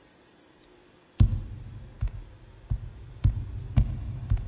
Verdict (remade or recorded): recorded